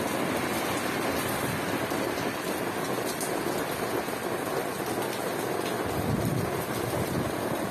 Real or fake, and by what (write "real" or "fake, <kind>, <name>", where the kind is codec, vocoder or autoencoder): real